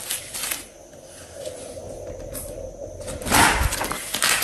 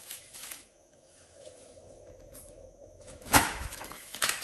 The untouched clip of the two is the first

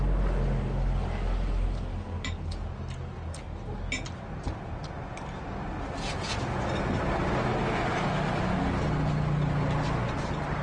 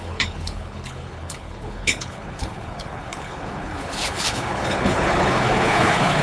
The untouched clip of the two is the first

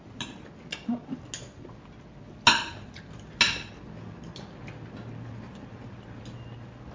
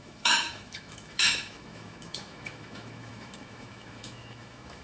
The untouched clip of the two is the first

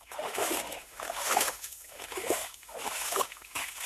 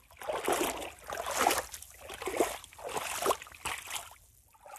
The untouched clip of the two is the second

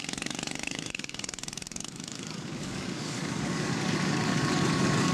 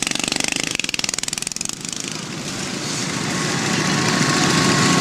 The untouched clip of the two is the second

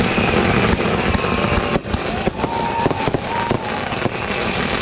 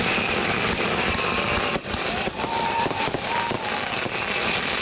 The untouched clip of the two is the first